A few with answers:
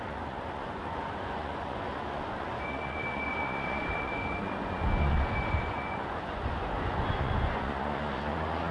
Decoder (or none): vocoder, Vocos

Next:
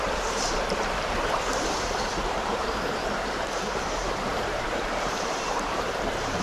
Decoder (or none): vocoder, BigVGAN v2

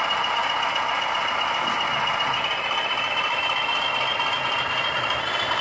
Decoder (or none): none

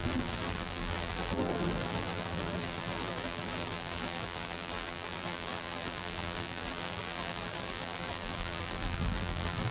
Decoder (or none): vocoder, BigVGAN v2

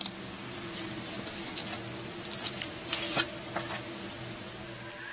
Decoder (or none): none